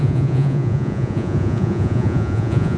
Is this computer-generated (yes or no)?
yes